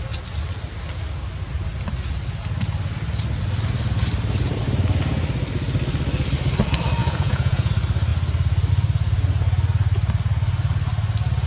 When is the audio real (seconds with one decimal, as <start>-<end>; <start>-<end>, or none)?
0.0-7.0; 7.7-11.5